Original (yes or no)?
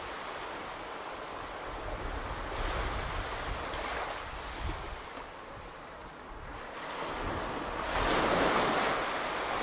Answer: yes